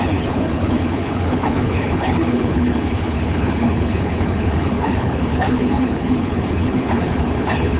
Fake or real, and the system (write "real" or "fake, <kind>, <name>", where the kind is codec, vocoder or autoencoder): fake, codec, HILCodec